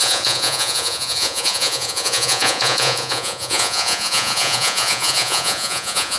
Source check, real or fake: fake